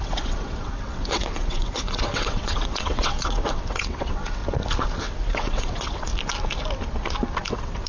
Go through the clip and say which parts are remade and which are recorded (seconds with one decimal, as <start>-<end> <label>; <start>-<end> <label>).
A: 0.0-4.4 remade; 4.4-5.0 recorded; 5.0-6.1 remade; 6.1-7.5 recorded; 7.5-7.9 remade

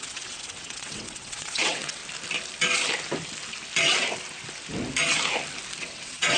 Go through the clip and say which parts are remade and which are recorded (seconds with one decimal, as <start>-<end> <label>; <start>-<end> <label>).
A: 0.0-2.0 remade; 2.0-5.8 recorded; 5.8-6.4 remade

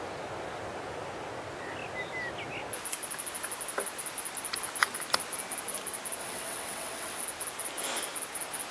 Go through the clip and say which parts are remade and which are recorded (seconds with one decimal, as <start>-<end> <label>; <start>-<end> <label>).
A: 0.0-6.2 recorded; 6.2-7.2 remade; 7.2-8.7 recorded